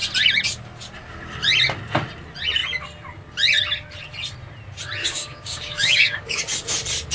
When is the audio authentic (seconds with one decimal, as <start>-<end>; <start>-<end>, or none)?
0.0-5.0; 6.4-7.1